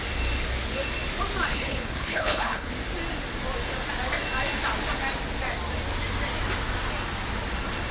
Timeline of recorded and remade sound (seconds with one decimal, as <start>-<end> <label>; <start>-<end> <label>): 0.0-1.5 recorded; 1.5-2.7 remade; 2.7-7.9 recorded